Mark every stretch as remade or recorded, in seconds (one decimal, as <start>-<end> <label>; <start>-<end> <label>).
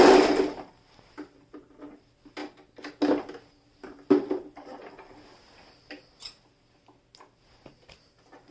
0.0-8.5 recorded